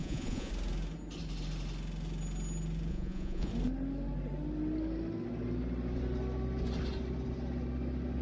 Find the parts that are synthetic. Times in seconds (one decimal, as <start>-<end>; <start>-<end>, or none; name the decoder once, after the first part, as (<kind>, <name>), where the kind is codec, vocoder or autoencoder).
0.0-0.5 (vocoder, Vocos); 2.9-3.5